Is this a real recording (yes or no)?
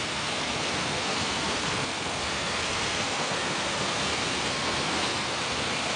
no